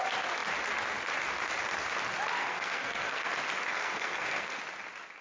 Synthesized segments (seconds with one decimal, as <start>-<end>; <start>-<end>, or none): 2.4-3.3; 3.7-4.6